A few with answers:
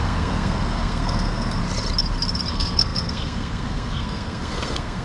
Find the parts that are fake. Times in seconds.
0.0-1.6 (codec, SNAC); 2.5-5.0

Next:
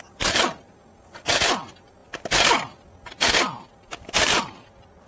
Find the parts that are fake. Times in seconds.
3.9-4.5 (vocoder, BigVGAN v2)

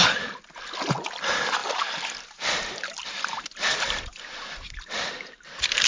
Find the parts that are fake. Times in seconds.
1.6-5.1 (vocoder, BigVGAN v2)

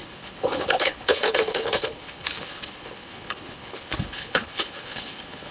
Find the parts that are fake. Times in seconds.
0.0-5.5 (codec, HILCodec)

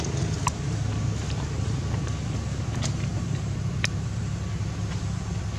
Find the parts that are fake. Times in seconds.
none

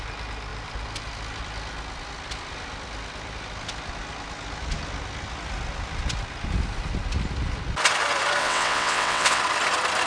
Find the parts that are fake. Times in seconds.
8.4-9.4 (vocoder, WaveNeXt)

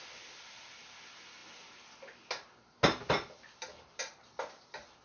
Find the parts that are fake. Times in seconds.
none

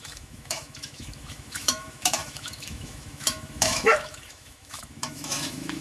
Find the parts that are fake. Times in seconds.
0.0-5.8 (autoencoder, DAC-VAE)